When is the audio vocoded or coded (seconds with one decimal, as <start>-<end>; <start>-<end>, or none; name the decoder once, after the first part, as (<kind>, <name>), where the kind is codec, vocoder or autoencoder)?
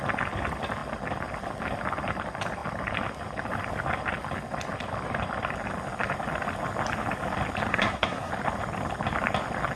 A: 7.7-8.3 (codec, SNAC)